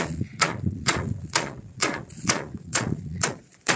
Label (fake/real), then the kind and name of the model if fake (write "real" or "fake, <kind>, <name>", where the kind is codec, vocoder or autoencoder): fake, vocoder, Vocos